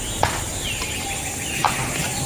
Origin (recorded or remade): recorded